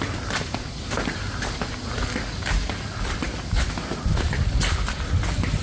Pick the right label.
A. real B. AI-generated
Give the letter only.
A